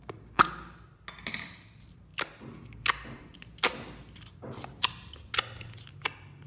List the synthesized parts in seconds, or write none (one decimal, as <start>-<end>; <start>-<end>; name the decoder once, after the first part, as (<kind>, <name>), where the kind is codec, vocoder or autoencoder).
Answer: none